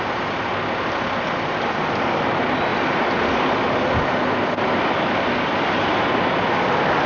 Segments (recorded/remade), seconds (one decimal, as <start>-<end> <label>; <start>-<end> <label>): 0.0-7.1 recorded